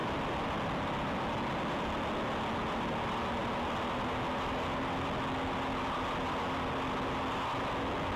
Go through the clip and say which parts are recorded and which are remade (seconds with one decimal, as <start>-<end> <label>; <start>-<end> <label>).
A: 0.0-8.2 recorded